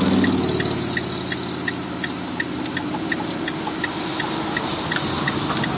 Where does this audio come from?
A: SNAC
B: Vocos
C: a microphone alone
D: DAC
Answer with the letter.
C